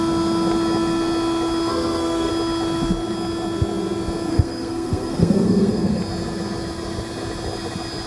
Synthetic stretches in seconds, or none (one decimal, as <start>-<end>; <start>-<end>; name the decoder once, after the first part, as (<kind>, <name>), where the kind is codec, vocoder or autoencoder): 1.7-2.3 (codec, SNAC); 4.3-6.0